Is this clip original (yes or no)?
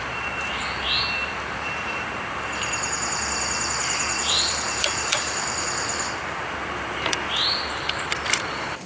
no